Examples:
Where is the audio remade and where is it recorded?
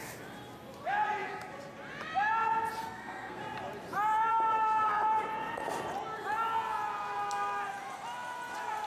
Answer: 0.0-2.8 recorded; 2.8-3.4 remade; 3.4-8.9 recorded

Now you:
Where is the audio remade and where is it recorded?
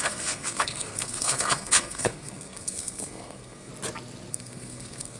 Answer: 0.0-3.7 remade; 3.7-4.3 recorded; 4.3-5.2 remade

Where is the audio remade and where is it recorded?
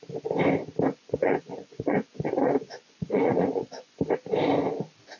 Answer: 0.0-0.9 recorded; 0.9-4.0 remade; 4.0-5.2 recorded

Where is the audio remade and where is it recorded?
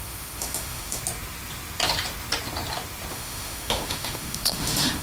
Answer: 0.0-1.0 remade; 1.0-3.1 recorded; 3.1-5.0 remade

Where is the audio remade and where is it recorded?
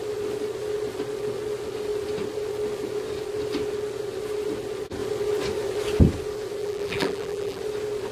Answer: 0.0-6.6 recorded; 6.6-7.6 remade; 7.6-8.1 recorded